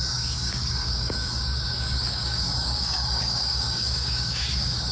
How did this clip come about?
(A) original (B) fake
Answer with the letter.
B